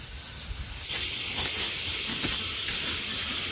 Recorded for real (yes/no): yes